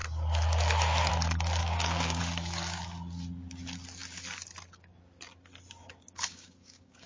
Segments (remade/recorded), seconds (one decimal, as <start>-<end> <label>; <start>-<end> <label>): 0.0-1.6 recorded; 1.6-2.2 remade; 2.2-5.8 recorded; 5.8-7.1 remade

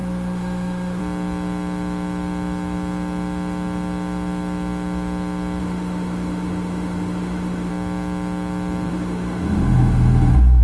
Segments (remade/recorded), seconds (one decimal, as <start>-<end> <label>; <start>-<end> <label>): 0.0-1.0 remade; 1.0-5.6 recorded; 5.6-7.7 remade; 7.7-8.9 recorded; 8.9-10.6 remade

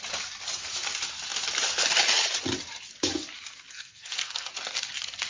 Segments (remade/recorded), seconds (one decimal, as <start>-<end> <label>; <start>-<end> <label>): 0.0-3.7 recorded; 3.7-4.5 remade; 4.5-5.3 recorded

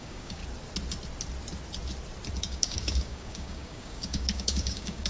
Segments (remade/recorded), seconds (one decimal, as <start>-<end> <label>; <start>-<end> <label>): 0.0-0.4 remade; 0.4-2.4 recorded; 2.4-5.1 remade

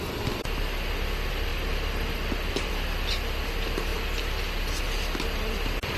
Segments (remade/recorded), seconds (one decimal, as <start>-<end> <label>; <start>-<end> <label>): 0.0-1.5 recorded; 1.5-2.7 remade; 2.7-6.0 recorded